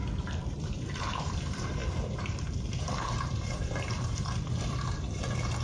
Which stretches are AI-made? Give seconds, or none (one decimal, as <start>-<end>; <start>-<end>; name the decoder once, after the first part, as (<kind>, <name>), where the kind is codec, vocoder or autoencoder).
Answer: 0.5-5.6 (vocoder, BigVGAN v2)